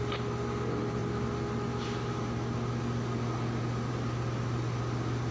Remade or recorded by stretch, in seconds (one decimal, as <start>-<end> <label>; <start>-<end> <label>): 0.0-5.3 recorded